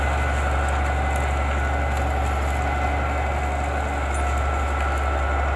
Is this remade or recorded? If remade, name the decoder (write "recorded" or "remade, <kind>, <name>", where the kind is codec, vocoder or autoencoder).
recorded